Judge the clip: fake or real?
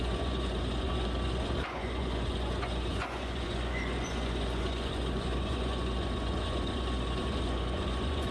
fake